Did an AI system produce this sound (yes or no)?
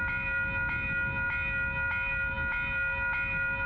no